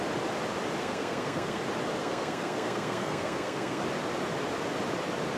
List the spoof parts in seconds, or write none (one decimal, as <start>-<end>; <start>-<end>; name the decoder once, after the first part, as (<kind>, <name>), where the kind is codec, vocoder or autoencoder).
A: 0.8-1.6 (codec, SNAC); 2.0-3.8

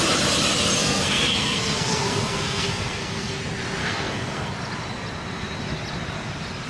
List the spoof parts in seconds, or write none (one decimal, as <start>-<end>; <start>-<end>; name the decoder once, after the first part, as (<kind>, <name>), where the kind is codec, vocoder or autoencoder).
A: 0.8-3.4 (codec, SNAC); 3.8-4.5

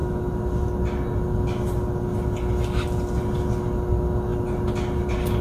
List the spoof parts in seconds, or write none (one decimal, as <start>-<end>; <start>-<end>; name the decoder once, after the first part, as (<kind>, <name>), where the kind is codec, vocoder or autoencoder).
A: none

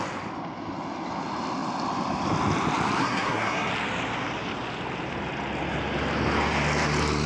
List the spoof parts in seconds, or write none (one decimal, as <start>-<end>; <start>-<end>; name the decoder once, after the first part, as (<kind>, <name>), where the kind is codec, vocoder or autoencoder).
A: 3.0-3.7 (codec, SNAC)

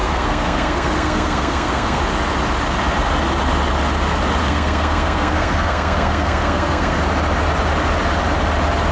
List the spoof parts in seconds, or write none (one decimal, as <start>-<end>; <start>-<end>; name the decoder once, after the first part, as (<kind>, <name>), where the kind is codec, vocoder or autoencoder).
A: 0.0-2.0 (codec, SNAC); 4.4-7.0

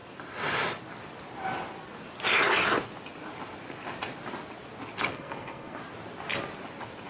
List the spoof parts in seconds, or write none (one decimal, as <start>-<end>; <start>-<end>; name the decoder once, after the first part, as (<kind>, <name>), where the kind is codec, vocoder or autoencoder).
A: 5.1-5.8 (codec, SNAC)

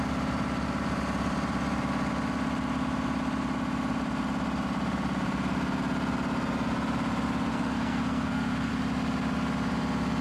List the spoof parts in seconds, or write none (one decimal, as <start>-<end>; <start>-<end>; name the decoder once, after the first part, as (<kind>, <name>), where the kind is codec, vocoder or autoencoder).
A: 7.5-8.7 (codec, SNAC)

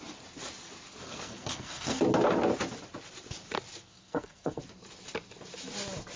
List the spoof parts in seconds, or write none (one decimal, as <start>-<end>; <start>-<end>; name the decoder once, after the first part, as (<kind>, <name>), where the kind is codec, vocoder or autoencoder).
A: 1.0-2.0 (codec, SNAC); 3.8-4.6